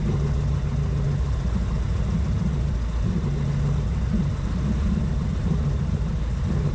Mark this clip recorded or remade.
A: recorded